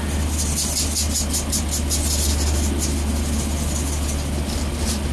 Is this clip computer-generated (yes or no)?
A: no